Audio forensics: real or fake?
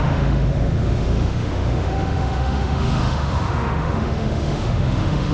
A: fake